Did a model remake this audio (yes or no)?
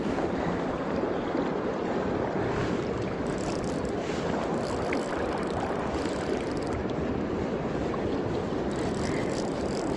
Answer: no